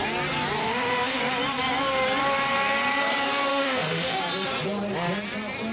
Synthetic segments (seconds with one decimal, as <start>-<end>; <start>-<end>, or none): 0.6-1.2; 3.5-4.2